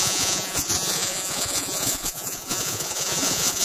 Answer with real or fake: fake